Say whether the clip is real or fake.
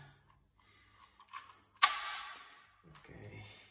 real